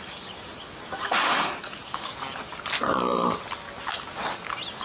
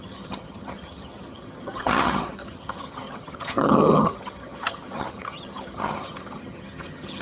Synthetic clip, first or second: second